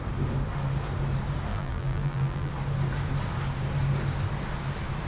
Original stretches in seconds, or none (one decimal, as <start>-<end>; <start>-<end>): 0.0-1.5; 2.5-5.1